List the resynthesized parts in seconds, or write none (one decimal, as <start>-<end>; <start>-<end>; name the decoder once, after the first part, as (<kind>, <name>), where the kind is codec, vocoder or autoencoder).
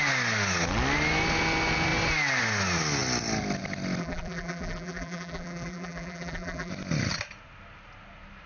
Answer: 4.0-6.7 (vocoder, BigVGAN v2)